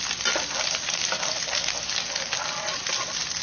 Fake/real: real